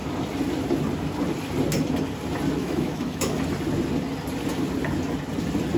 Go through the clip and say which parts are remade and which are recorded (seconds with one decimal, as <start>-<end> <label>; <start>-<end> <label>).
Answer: 0.0-2.6 recorded; 2.6-3.4 remade; 3.4-5.8 recorded